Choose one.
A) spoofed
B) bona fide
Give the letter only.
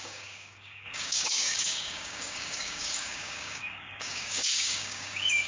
A